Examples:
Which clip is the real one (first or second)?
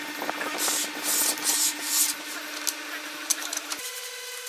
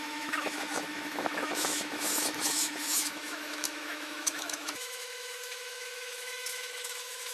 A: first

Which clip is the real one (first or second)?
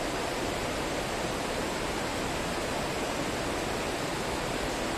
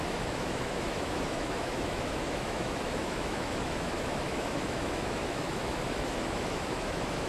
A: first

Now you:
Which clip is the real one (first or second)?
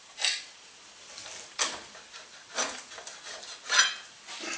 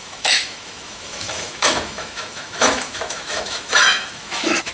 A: first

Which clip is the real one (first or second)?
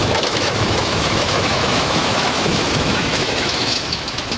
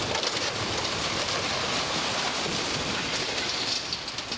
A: second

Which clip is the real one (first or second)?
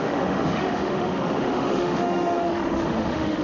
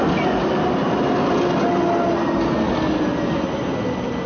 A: second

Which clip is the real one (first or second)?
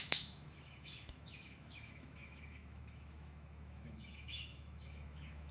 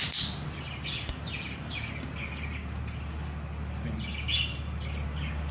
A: second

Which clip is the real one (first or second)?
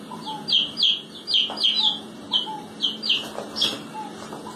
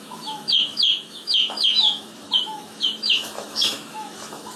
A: first